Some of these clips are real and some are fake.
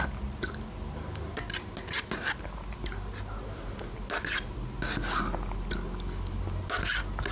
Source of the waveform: real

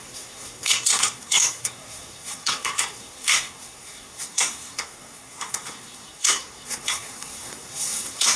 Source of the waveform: fake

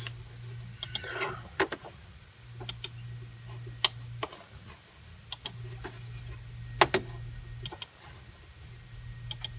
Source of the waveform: real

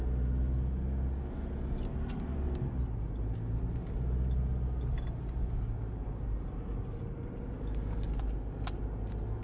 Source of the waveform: real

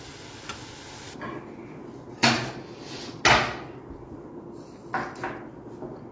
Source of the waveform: real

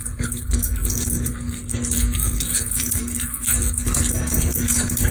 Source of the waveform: fake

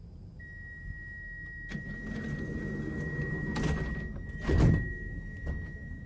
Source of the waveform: real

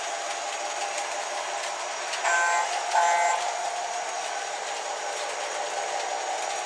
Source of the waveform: real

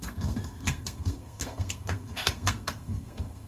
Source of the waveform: fake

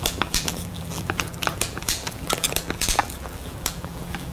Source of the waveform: fake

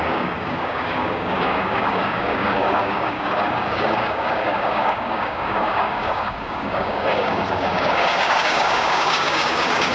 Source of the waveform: fake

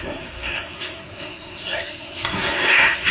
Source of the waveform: fake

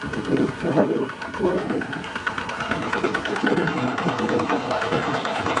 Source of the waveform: fake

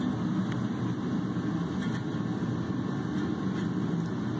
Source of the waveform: real